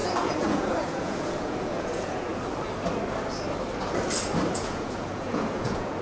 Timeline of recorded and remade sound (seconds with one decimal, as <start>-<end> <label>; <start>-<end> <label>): 0.0-2.3 remade; 2.3-4.5 recorded; 4.5-6.0 remade